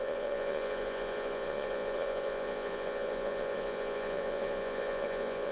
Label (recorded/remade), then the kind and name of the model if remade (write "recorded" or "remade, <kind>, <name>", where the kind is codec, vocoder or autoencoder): remade, vocoder, Vocos